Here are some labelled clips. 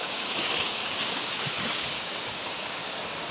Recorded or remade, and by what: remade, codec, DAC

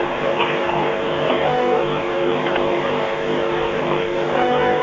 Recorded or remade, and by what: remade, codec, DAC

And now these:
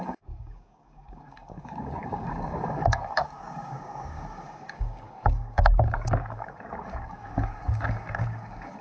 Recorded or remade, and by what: remade, codec, DAC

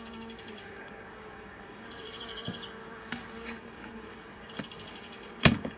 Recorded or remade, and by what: remade, codec, DAC